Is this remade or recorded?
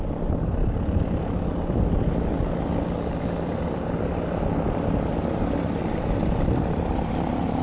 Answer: recorded